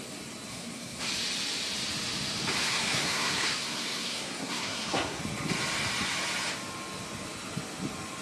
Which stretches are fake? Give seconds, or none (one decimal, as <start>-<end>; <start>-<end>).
0.5-1.1; 2.6-5.2